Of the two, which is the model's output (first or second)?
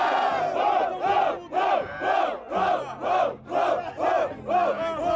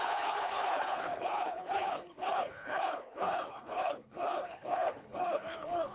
second